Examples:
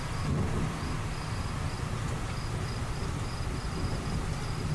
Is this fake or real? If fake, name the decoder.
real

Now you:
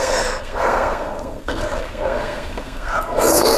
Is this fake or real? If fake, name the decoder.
fake, codec, SNAC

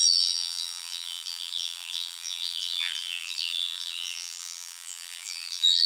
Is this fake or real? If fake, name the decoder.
fake, vocoder, BigVGAN v2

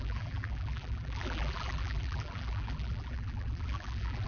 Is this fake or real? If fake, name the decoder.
fake, vocoder, BigVGAN v2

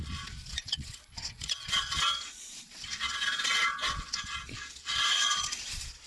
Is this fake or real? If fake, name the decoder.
fake, vocoder, Vocos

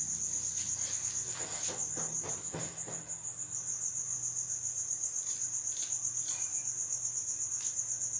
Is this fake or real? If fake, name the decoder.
real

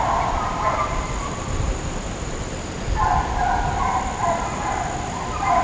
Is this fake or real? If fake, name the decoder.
real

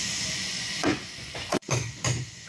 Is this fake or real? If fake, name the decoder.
fake, vocoder, Vocos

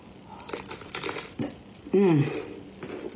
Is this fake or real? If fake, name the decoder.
real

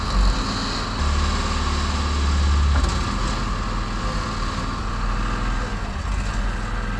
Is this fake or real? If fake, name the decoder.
real